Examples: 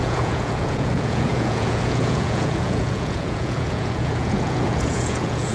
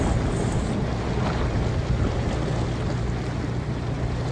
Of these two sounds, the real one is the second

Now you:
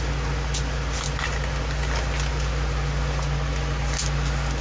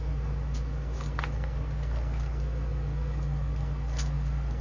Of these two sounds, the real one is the first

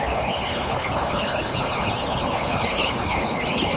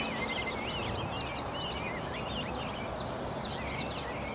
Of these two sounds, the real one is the second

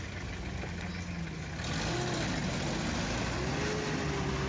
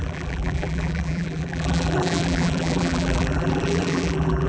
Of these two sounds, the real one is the first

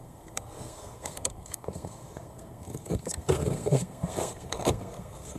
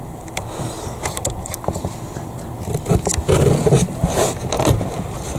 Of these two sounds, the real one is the second